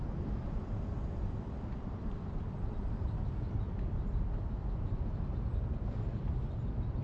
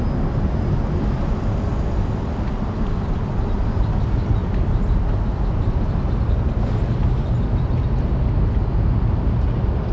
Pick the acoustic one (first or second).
second